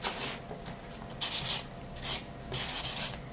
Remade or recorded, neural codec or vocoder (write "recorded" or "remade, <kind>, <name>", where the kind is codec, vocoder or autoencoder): recorded